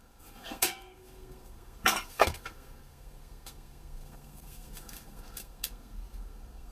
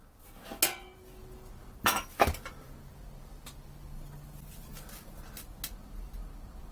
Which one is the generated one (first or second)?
first